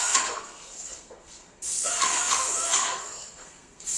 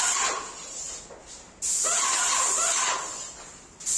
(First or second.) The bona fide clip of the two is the second